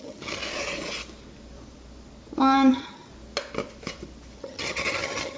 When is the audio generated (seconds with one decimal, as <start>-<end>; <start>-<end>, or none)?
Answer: 0.0-0.4; 2.7-3.1; 4.4-5.4